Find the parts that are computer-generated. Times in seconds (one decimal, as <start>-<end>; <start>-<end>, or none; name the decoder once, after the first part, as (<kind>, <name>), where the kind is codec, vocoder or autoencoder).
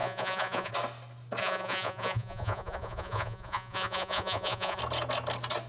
0.0-0.7 (vocoder, Vocos); 1.4-4.8